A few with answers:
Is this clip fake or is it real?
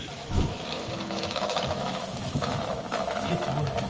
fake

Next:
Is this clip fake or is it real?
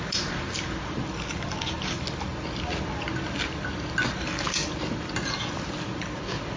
real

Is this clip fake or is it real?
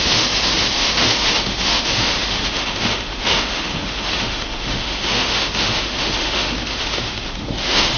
fake